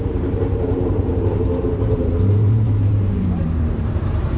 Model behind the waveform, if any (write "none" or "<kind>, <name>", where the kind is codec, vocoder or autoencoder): vocoder, BigVGAN v2